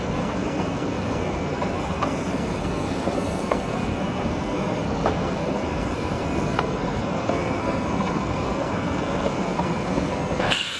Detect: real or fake fake